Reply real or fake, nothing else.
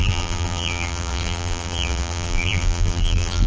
fake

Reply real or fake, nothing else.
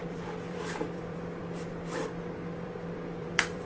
fake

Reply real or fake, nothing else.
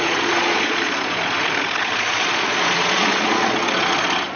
fake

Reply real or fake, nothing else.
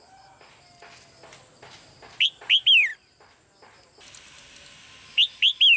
real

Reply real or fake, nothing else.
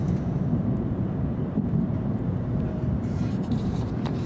fake